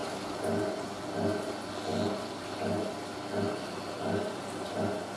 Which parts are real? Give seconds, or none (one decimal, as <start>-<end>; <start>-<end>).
0.0-5.2